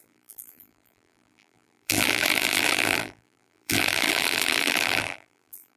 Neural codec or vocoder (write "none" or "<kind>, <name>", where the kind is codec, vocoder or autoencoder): vocoder, BigVGAN v2